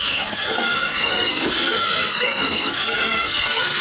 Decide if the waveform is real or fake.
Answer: fake